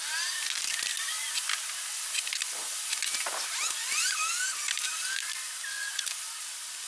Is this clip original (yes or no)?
yes